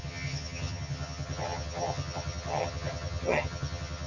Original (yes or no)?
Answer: no